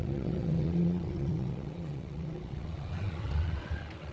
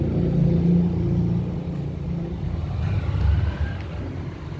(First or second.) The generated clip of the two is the first